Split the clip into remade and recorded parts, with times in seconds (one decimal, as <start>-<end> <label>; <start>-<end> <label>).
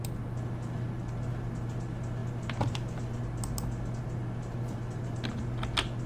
0.0-6.1 recorded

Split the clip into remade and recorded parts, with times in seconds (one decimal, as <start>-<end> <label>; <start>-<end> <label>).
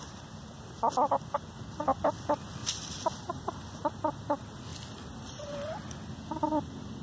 0.0-2.6 recorded; 2.6-3.9 remade; 3.9-7.0 recorded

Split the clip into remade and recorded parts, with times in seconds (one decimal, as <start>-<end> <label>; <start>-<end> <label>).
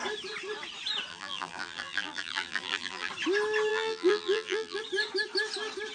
0.0-1.1 recorded; 1.1-3.1 remade; 3.1-3.7 recorded; 3.7-4.8 remade; 4.8-5.9 recorded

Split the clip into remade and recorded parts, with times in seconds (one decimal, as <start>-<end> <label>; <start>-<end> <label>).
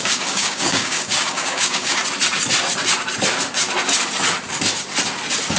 0.0-2.0 remade; 2.0-5.6 recorded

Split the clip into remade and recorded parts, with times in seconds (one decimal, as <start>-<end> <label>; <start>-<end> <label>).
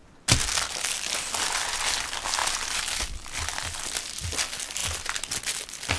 0.0-6.0 recorded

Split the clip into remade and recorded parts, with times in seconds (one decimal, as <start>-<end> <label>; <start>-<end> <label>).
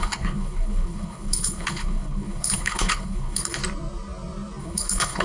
0.0-3.6 remade; 3.6-4.6 recorded; 4.6-5.2 remade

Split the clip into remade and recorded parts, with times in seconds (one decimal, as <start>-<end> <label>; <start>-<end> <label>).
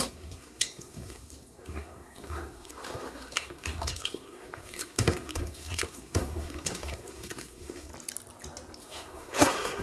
0.0-7.9 remade; 7.9-8.8 recorded; 8.8-9.8 remade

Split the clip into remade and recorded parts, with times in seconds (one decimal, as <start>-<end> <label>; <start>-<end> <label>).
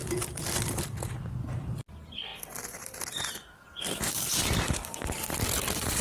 0.0-6.0 recorded